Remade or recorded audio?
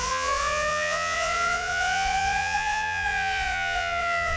remade